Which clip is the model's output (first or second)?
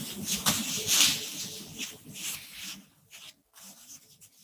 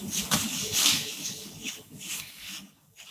second